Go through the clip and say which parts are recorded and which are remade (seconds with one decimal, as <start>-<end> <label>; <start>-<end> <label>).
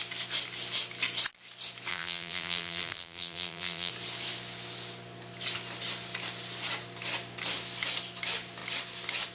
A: 0.0-1.9 recorded; 1.9-3.9 remade; 3.9-9.3 recorded